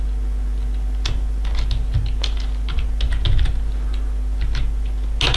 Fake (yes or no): no